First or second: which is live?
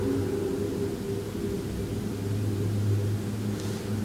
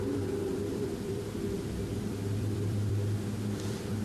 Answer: first